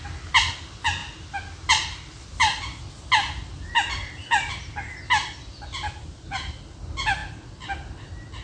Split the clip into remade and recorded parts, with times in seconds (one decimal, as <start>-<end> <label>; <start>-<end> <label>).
0.0-8.4 recorded